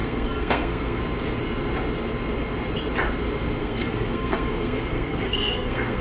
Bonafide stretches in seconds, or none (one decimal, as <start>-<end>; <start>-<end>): 1.0-3.6